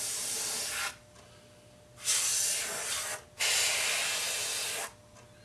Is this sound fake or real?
real